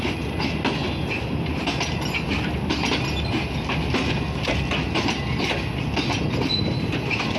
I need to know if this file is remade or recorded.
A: recorded